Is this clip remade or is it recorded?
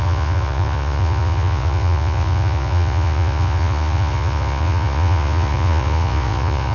remade